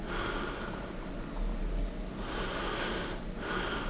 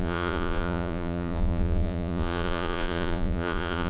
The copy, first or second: second